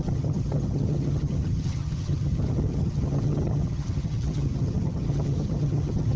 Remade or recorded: remade